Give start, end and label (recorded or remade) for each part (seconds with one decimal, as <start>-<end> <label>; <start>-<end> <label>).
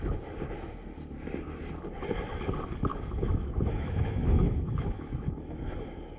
0.0-2.9 recorded; 2.9-5.6 remade; 5.6-6.2 recorded